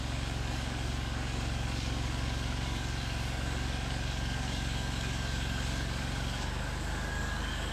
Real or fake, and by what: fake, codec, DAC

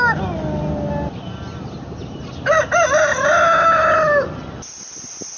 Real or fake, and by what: real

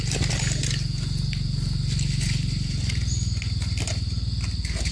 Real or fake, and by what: real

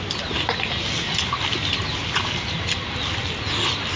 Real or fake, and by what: real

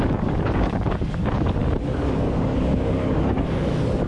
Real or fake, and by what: fake, codec, DAC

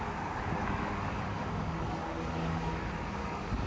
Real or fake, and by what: fake, codec, DAC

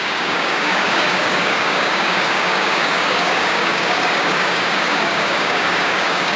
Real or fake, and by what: fake, codec, DAC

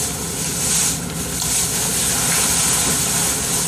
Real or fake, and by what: real